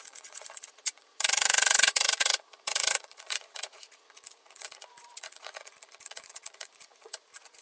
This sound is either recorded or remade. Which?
remade